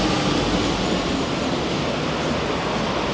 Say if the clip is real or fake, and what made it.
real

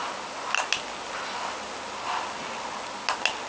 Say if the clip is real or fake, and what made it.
real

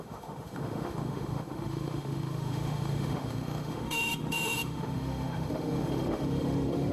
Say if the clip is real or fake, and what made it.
fake, autoencoder, DAC-VAE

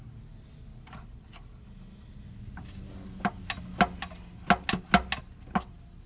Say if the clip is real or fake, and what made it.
real